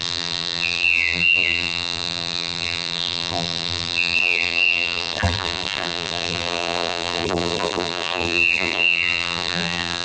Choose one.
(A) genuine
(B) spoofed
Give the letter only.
B